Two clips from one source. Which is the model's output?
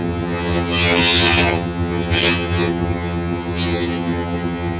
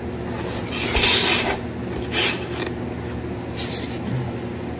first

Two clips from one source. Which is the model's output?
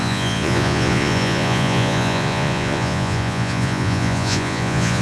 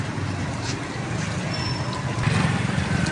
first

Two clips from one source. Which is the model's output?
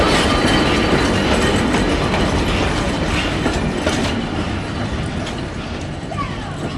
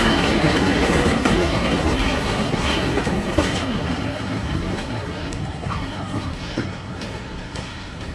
second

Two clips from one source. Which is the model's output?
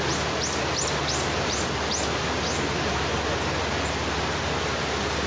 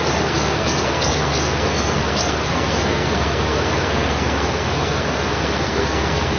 second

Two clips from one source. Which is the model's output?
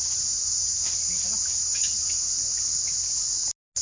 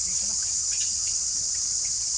second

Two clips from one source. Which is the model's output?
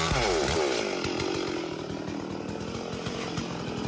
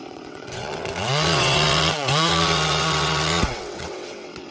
second